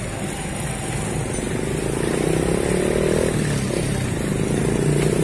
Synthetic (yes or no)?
no